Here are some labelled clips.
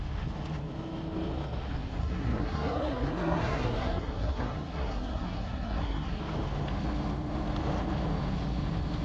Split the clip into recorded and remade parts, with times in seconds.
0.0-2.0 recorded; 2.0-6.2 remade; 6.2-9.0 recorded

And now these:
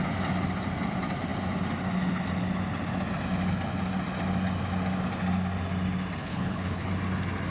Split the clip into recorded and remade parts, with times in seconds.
0.0-6.2 recorded; 6.2-6.9 remade; 6.9-7.5 recorded

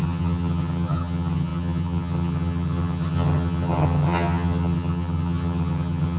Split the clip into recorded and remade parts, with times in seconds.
0.0-6.2 remade